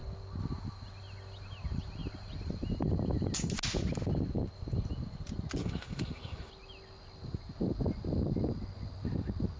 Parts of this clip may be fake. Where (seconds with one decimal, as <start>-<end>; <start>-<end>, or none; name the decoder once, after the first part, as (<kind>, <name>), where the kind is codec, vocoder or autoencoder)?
5.6-6.5 (autoencoder, DAC-VAE)